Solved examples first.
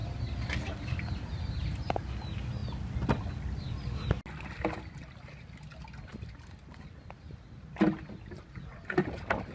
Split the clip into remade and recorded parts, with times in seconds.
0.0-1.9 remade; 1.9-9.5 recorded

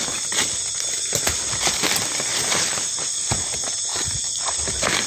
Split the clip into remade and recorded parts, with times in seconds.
0.0-2.3 recorded; 2.3-3.0 remade; 3.0-3.9 recorded; 3.9-4.4 remade; 4.4-5.1 recorded

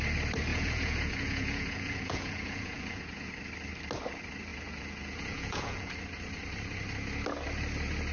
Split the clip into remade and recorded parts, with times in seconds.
0.0-0.5 recorded; 0.5-3.3 remade; 3.3-4.5 recorded; 4.5-5.9 remade; 5.9-8.1 recorded

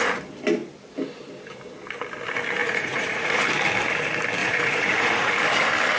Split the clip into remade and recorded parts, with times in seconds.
0.0-2.6 recorded; 2.6-3.4 remade; 3.4-4.4 recorded; 4.4-5.3 remade; 5.3-6.0 recorded

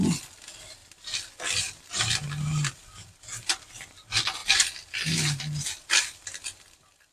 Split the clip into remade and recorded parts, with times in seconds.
0.0-0.8 recorded; 0.8-1.3 remade; 1.3-7.1 recorded

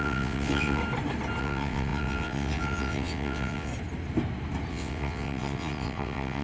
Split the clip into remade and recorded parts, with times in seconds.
0.0-0.8 remade; 0.8-1.4 recorded; 1.4-3.7 remade; 3.7-4.7 recorded; 4.7-6.4 remade

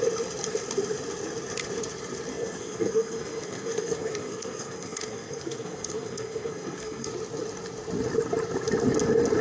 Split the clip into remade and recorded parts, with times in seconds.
0.0-2.3 recorded; 2.3-7.1 remade; 7.1-9.4 recorded

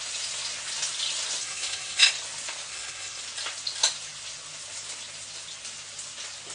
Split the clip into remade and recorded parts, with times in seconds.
0.0-1.4 recorded; 1.4-2.1 remade; 2.1-2.7 recorded; 2.7-3.2 remade; 3.2-6.5 recorded